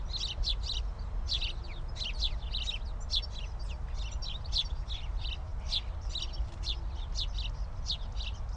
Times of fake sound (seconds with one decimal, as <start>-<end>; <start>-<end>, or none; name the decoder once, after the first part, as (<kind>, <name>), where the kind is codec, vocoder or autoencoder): none